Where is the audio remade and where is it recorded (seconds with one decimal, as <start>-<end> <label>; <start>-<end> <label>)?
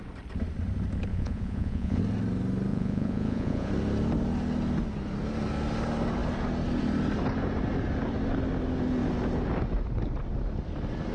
0.0-1.1 recorded; 1.1-2.0 remade; 2.0-2.7 recorded; 2.7-3.7 remade; 3.7-11.1 recorded